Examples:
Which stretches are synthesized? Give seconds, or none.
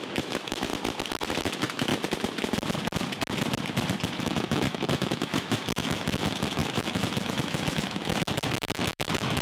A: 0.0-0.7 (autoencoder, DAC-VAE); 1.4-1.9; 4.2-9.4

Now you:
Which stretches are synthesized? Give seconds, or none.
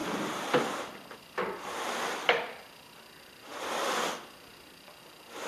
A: none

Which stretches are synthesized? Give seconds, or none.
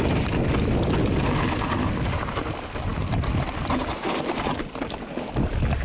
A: none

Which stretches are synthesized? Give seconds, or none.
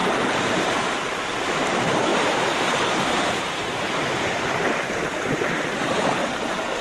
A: 0.0-0.8 (vocoder, BigVGAN v2); 2.1-6.2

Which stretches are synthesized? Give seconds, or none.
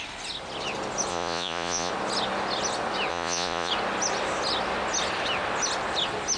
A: 1.1-1.9 (vocoder, Vocos); 3.1-3.7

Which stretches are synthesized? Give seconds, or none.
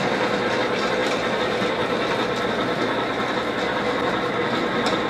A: none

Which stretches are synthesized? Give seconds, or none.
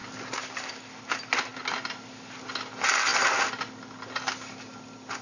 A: none